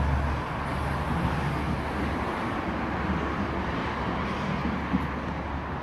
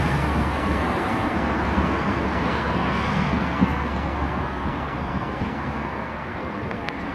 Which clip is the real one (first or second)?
first